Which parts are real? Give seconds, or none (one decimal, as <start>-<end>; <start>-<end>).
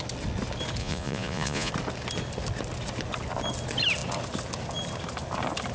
0.0-0.8; 1.7-5.7